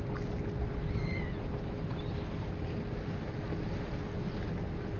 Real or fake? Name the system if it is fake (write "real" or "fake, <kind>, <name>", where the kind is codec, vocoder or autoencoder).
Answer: real